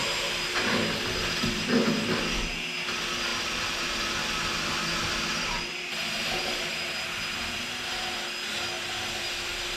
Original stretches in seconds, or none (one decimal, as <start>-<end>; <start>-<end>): 0.0-9.8